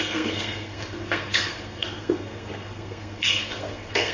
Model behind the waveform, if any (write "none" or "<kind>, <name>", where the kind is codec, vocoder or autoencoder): codec, SNAC